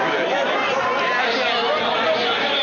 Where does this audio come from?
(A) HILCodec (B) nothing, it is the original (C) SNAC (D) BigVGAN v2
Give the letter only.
B